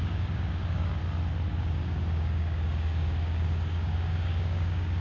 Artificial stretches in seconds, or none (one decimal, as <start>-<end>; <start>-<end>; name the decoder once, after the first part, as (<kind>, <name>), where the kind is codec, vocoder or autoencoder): 0.0-1.0 (codec, DAC); 1.5-5.0